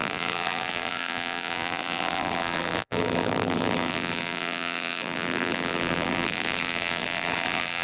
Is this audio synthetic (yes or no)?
yes